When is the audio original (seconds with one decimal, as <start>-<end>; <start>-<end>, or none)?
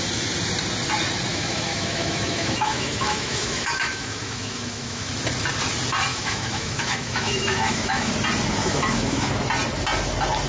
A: 0.0-1.3; 5.1-6.1; 8.1-8.6; 9.3-10.5